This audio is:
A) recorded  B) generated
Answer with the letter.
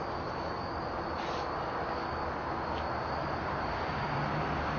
A